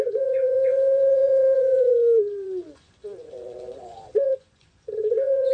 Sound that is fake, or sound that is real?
fake